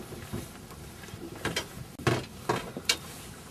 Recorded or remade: recorded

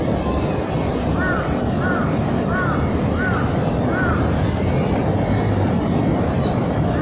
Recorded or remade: recorded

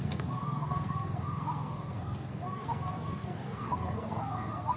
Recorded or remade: remade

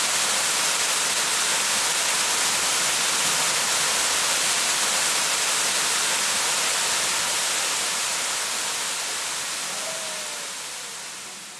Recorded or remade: recorded